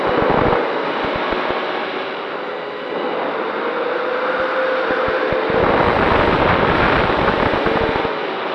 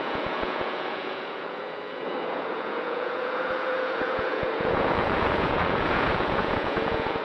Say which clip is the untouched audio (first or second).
first